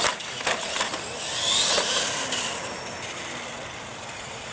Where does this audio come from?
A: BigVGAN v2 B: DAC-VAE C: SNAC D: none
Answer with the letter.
D